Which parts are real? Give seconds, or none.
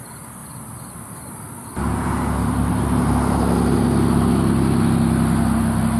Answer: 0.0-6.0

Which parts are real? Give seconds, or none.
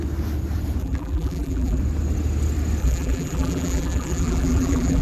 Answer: 0.0-0.8; 1.8-2.8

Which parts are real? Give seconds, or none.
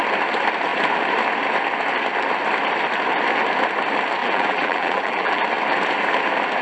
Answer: 0.0-4.2; 5.4-6.6